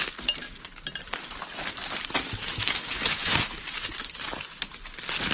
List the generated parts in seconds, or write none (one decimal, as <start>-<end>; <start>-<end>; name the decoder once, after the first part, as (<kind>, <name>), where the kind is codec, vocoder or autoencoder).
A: 2.4-3.3 (autoencoder, DAC-VAE)